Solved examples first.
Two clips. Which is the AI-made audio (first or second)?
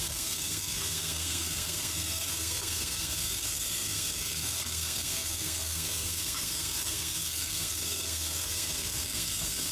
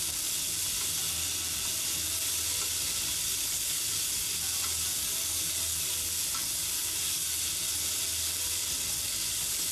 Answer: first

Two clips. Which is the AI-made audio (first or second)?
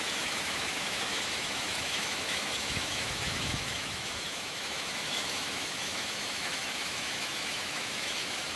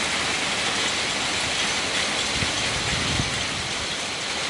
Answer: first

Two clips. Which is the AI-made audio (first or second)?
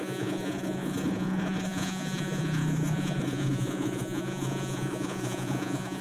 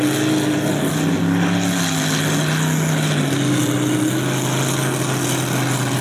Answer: first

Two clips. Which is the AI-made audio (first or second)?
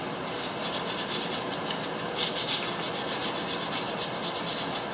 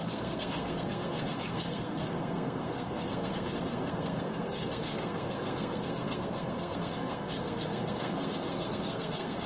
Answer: second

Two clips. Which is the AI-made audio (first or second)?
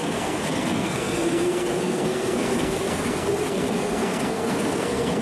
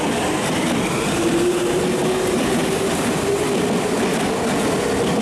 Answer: first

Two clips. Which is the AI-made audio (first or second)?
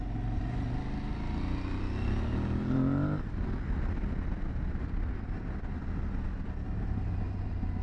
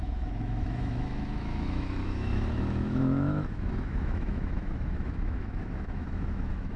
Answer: second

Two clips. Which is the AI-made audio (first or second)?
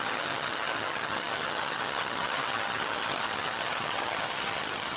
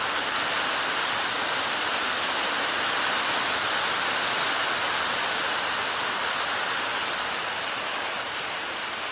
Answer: first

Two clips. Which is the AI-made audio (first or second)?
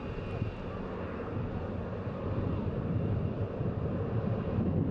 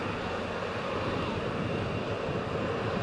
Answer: first